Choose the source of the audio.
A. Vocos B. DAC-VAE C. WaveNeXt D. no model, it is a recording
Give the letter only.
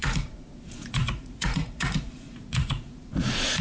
A